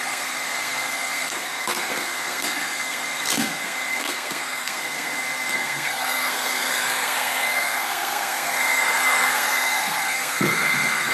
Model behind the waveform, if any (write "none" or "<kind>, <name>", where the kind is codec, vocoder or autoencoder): codec, SNAC